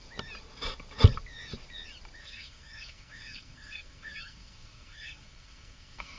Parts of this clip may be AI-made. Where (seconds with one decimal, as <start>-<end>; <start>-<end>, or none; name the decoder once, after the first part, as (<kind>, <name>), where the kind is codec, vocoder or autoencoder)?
2.2-6.2 (codec, SNAC)